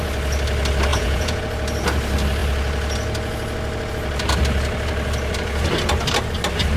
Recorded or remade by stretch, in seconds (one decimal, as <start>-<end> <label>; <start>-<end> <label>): 0.0-0.9 recorded; 0.9-1.4 remade; 1.4-6.8 recorded